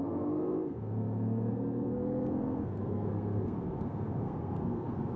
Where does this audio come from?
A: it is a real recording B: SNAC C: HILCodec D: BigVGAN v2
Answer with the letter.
B